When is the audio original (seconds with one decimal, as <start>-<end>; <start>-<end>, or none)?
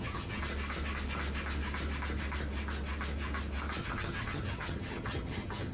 0.4-3.8